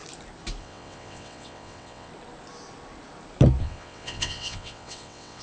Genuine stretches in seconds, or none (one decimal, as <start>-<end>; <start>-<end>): 0.0-0.6; 2.1-3.6